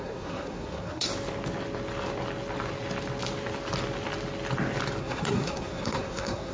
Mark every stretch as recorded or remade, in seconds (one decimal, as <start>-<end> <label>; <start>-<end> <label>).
0.0-1.1 remade; 1.1-5.0 recorded; 5.0-6.5 remade